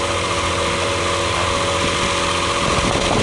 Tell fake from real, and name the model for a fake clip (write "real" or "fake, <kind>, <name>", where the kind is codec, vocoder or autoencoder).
real